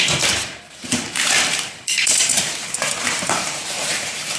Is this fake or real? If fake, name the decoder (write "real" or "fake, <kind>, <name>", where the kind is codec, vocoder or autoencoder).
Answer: fake, vocoder, BigVGAN v2